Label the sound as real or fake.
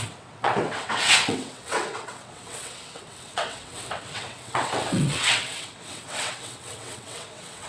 fake